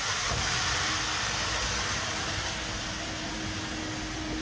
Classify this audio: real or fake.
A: real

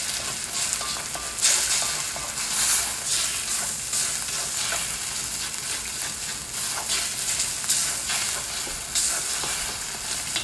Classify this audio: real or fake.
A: real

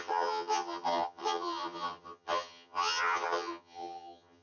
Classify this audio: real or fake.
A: fake